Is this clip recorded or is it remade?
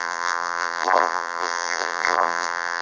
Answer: remade